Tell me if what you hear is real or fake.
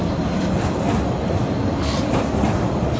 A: real